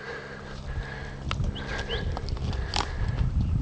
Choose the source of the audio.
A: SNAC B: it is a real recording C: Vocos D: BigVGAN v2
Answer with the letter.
B